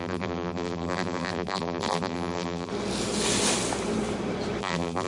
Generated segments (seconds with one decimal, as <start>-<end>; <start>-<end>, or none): 0.0-2.7; 4.6-5.1